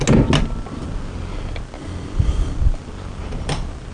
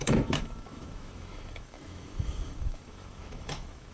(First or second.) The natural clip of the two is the first